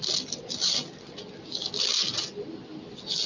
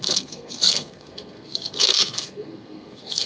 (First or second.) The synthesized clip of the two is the second